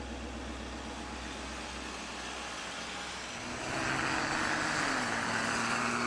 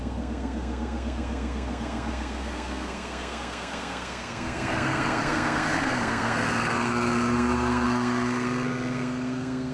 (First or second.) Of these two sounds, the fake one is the second